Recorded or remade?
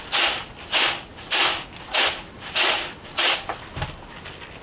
recorded